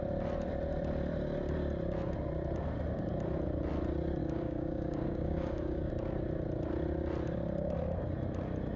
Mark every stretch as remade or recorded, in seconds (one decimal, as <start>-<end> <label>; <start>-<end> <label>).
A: 0.0-4.2 recorded; 4.2-5.9 remade; 5.9-8.8 recorded